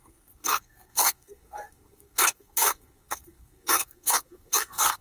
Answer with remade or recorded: remade